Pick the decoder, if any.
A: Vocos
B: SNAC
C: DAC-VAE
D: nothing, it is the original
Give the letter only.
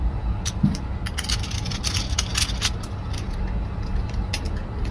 D